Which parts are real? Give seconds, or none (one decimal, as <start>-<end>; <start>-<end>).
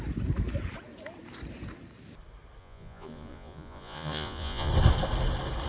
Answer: 0.0-2.6; 4.7-5.7